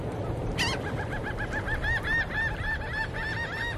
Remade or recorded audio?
recorded